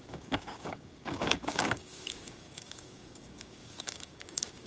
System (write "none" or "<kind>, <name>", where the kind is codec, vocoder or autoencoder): codec, DAC